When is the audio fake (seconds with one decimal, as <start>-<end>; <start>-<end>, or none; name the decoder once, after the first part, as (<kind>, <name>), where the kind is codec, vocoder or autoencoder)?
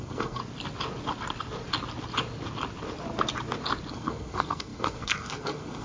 0.0-0.4 (codec, SNAC); 3.9-5.8